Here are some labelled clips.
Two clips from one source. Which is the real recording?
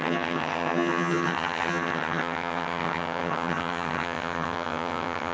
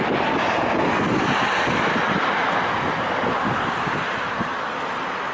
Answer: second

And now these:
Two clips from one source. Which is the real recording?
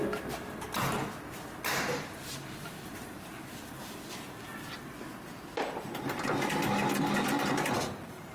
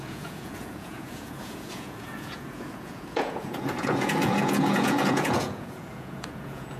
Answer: first